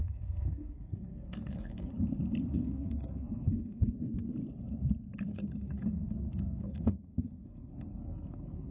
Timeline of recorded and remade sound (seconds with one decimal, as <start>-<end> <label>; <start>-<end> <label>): 0.0-1.9 remade; 1.9-2.5 recorded; 2.5-3.8 remade; 3.8-5.3 recorded; 5.3-8.7 remade